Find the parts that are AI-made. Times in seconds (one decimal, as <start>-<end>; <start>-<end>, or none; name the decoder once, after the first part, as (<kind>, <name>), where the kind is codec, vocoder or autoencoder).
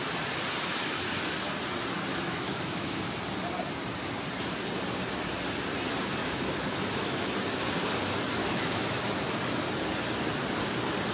2.1-3.1 (autoencoder, DAC-VAE); 6.2-7.3; 8.4-9.2